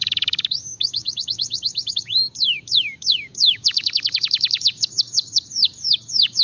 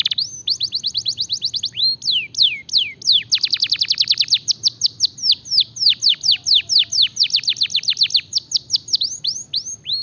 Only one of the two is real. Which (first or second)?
second